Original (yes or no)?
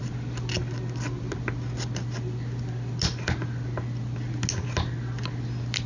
yes